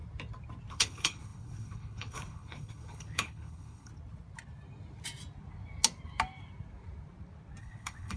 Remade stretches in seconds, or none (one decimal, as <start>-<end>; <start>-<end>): 0.7-3.9; 7.6-8.2

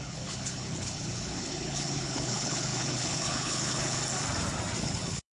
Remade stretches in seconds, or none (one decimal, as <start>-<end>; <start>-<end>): 0.0-4.0; 4.8-5.4

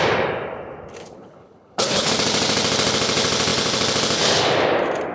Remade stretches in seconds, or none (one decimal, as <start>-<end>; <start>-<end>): 1.0-2.1

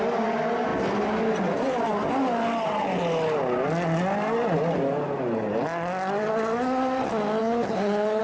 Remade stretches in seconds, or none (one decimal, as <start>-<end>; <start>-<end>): 7.4-8.2

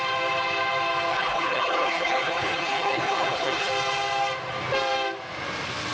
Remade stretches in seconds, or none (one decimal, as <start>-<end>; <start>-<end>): 1.1-3.7

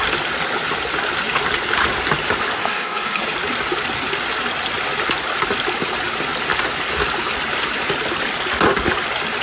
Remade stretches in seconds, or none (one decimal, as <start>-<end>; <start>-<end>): 2.6-3.2